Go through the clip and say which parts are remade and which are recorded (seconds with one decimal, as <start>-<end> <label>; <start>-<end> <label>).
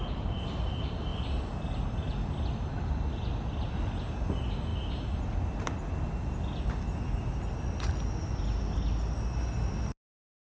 0.0-10.5 recorded